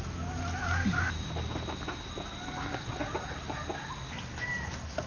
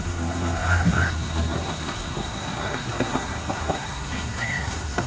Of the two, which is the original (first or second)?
first